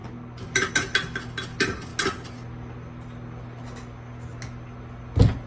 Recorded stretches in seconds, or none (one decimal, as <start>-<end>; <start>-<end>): 0.0-5.5